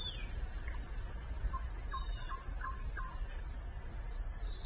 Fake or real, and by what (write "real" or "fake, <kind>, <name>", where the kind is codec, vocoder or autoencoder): real